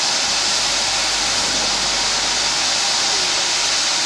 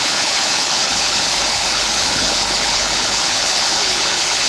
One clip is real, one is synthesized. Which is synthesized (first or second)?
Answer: second